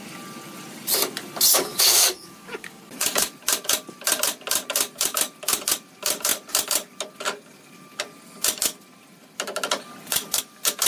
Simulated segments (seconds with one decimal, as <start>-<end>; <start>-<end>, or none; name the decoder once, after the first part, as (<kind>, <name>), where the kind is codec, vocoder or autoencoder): 1.5-2.8 (codec, DAC)